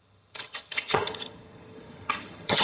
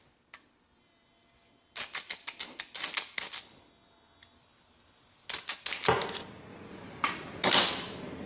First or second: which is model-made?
first